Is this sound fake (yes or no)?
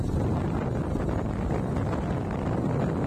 no